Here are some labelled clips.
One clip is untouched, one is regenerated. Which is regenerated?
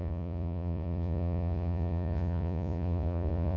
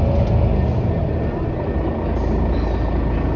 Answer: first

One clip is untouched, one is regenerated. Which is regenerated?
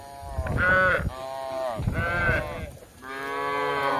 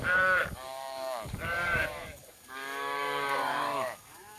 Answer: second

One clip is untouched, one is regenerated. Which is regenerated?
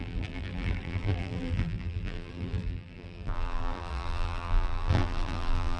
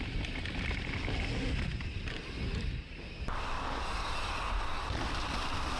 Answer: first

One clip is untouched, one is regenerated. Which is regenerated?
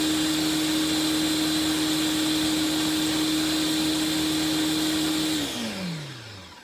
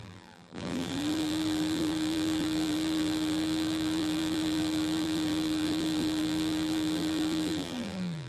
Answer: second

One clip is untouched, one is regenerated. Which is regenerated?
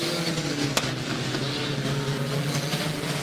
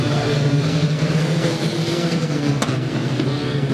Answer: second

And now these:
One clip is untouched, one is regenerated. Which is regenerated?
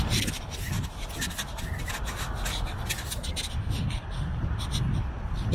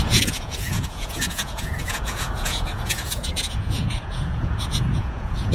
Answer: second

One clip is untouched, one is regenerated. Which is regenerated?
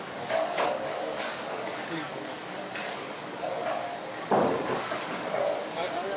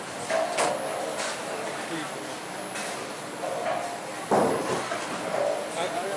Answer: first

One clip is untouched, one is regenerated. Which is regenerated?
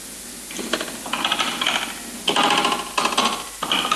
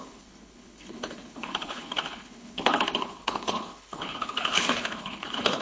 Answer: second